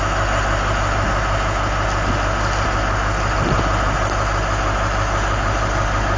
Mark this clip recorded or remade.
recorded